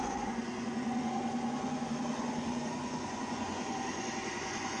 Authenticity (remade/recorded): remade